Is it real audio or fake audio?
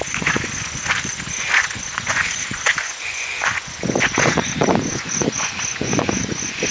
fake